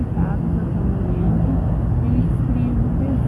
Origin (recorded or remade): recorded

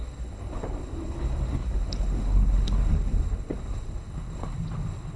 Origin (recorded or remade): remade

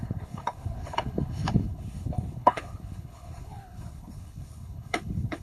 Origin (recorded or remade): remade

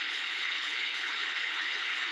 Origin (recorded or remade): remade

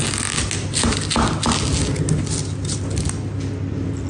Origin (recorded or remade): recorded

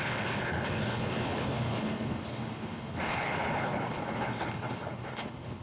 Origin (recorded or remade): remade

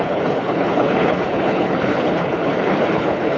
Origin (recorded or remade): remade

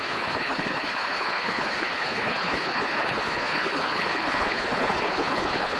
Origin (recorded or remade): remade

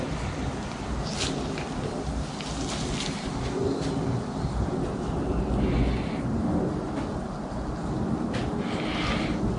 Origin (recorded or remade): recorded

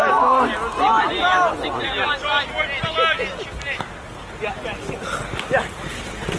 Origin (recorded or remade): recorded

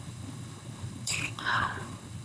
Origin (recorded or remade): remade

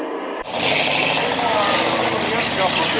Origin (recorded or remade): recorded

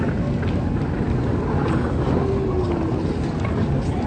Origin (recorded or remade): recorded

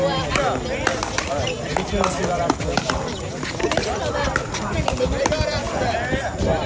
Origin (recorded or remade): recorded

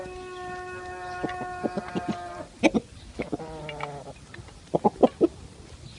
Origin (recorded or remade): recorded